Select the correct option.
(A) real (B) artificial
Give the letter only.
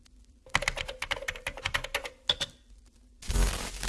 A